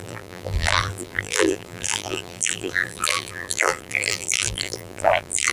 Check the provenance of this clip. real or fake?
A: fake